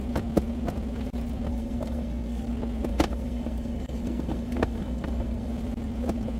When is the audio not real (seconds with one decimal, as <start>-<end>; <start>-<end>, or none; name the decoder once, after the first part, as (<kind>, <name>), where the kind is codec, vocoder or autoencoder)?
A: 1.5-2.5 (codec, SNAC); 2.9-5.5